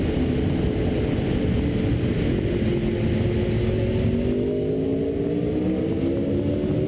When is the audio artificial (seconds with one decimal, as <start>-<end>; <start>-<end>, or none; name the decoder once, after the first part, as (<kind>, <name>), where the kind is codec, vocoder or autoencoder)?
none